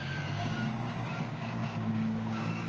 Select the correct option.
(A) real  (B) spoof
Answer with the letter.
B